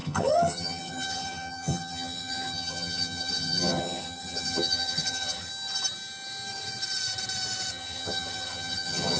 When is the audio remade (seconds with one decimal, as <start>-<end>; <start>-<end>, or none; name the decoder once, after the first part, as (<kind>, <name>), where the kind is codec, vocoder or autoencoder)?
0.0-5.5 (vocoder, HiFi-GAN); 7.7-9.2